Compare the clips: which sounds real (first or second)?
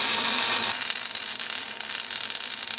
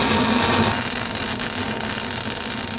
second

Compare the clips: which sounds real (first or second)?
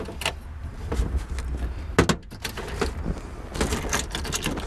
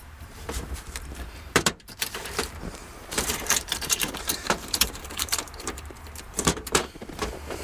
first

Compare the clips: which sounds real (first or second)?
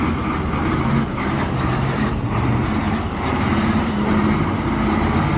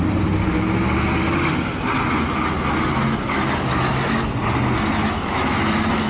second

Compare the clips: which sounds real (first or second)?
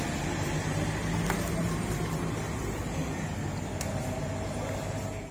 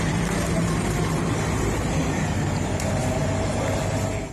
first